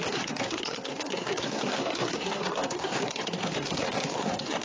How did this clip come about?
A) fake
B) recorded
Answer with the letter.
A